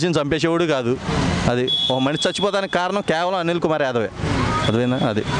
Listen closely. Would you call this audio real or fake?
real